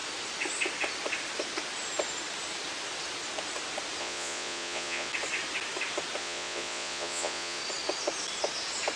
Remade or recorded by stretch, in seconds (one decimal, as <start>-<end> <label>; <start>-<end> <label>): 0.0-4.0 recorded; 4.0-5.1 remade; 5.1-6.2 recorded; 6.2-7.6 remade; 7.6-9.0 recorded